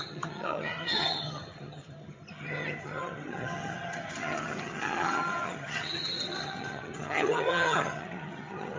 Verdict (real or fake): fake